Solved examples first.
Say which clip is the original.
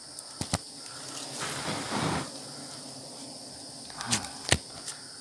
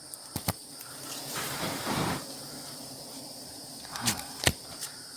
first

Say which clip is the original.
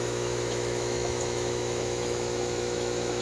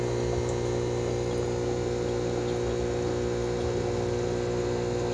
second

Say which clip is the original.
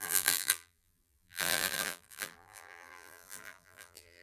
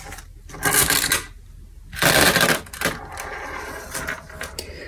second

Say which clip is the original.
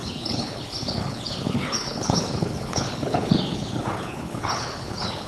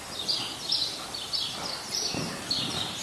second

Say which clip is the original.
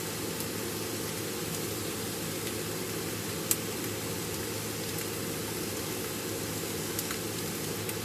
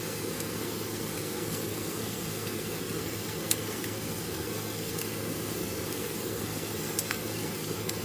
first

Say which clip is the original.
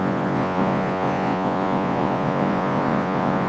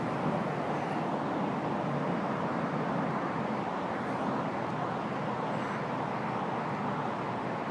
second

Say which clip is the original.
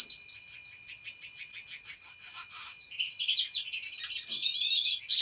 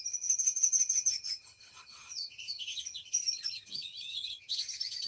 first